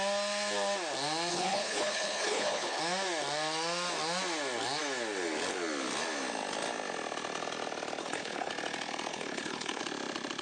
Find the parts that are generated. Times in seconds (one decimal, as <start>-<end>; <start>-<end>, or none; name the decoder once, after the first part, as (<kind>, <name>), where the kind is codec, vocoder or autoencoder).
1.3-2.8 (codec, HILCodec); 8.0-8.5; 9.1-9.8